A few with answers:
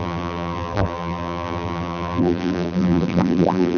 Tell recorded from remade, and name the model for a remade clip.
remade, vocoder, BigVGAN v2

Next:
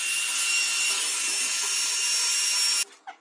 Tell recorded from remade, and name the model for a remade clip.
recorded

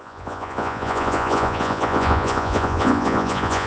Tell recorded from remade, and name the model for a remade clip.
remade, vocoder, Vocos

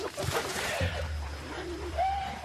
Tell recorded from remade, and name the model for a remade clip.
remade, vocoder, BigVGAN v2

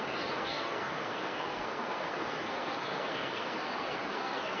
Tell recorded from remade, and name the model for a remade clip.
remade, codec, SNAC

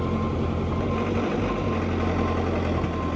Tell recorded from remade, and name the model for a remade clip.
recorded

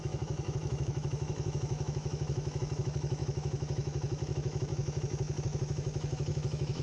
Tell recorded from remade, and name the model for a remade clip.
remade, autoencoder, DAC-VAE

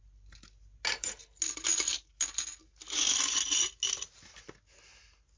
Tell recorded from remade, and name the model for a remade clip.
recorded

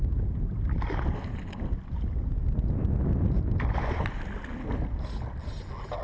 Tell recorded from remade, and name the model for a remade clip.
recorded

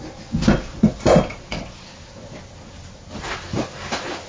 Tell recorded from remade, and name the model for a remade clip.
recorded